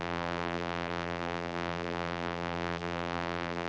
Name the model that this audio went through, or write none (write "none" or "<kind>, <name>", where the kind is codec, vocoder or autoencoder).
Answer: vocoder, BigVGAN v2